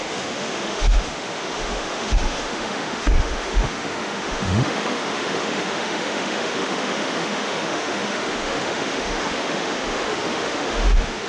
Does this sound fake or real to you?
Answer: fake